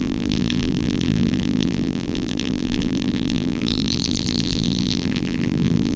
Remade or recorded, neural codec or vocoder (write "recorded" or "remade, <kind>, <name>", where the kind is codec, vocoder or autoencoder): remade, vocoder, BigVGAN v2